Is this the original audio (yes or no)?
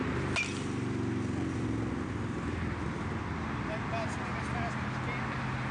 yes